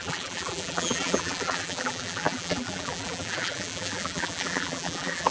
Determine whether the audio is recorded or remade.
remade